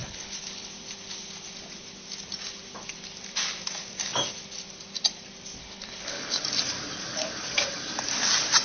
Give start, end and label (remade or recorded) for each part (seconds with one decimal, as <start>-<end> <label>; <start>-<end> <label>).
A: 0.0-0.7 remade; 0.7-5.6 recorded; 5.6-6.4 remade; 6.4-8.6 recorded